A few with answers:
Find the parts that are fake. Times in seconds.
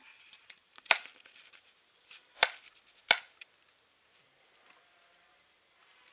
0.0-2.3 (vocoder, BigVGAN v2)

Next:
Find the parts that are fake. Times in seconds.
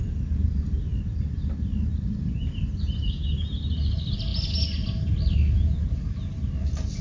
none